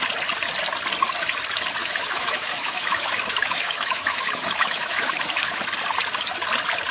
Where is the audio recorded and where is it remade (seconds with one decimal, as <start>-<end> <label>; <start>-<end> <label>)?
0.0-1.8 recorded; 1.8-5.6 remade; 5.6-6.9 recorded